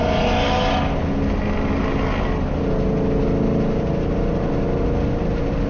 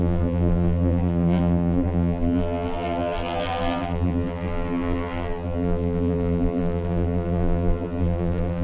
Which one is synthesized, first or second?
second